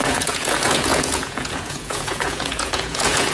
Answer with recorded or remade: remade